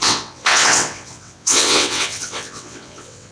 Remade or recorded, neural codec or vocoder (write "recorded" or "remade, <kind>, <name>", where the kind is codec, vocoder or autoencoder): remade, vocoder, WaveNeXt